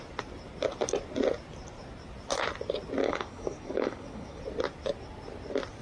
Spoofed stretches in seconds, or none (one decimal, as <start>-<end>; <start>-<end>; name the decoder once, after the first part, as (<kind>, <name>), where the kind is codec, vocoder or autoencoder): 3.0-4.4 (codec, DAC)